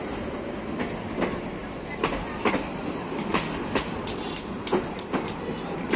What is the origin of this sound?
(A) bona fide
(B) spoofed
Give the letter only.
A